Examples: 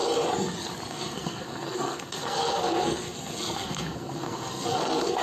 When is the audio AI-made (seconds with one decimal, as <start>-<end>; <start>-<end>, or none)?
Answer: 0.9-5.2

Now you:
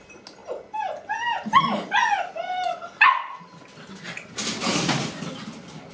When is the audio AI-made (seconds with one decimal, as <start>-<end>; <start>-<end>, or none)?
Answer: none

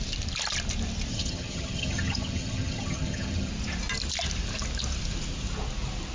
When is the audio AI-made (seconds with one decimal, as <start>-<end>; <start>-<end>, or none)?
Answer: 1.1-3.5